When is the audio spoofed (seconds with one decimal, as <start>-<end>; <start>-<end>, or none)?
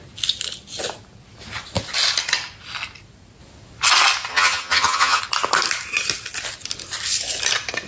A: 4.3-5.2